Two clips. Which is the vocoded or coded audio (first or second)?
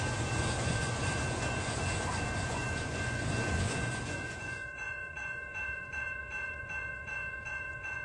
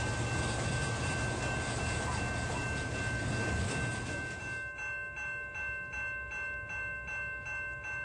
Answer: first